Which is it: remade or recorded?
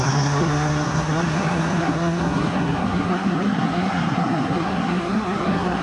remade